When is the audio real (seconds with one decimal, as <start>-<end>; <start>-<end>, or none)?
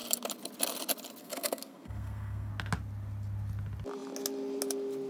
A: 0.0-1.2; 2.5-5.1